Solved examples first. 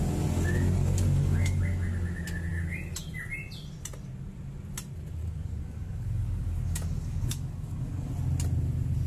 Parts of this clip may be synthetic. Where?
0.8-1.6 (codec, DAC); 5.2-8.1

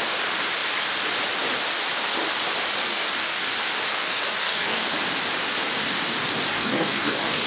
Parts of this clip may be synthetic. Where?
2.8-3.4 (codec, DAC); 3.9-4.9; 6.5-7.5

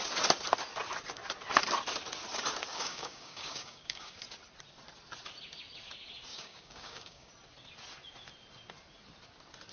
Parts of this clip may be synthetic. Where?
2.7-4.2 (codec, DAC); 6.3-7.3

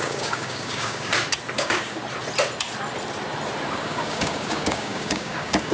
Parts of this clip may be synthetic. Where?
0.0-1.1 (codec, DAC); 1.6-2.0; 3.7-5.7

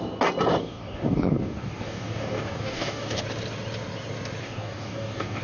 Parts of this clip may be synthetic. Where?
0.6-3.2 (codec, DAC); 4.4-5.4

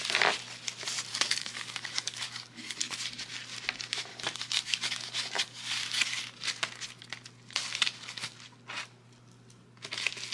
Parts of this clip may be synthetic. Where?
1.1-2.9 (codec, DAC); 4.1-6.2

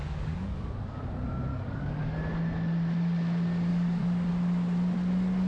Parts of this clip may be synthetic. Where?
0.0-1.0 (codec, DAC); 1.5-2.2; 3.7-4.3

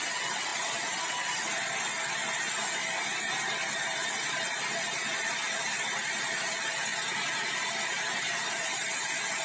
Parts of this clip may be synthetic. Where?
none